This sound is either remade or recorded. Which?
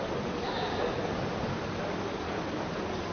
recorded